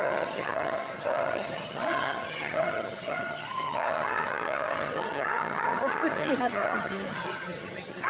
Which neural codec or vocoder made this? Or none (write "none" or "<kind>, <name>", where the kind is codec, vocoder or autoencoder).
vocoder, HiFi-GAN